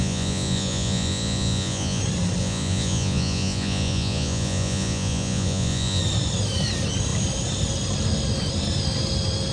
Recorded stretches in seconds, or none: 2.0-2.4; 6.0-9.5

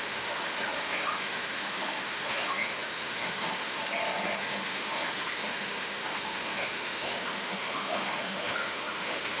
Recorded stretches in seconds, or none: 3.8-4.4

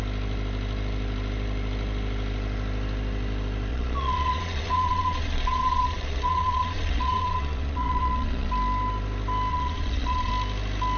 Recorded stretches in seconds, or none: 0.0-3.7; 8.5-9.5; 10.3-11.0

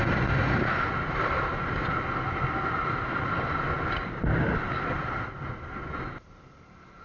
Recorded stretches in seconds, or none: 0.0-7.0

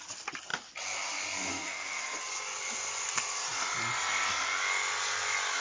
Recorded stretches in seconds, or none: 0.0-1.5; 2.2-5.6

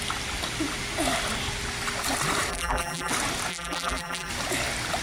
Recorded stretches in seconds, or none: 0.0-2.5; 3.1-3.5; 4.3-5.0